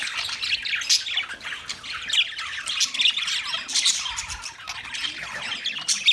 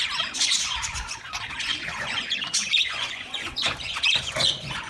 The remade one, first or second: second